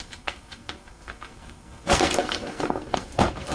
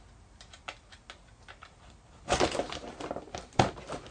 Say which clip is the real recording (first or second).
second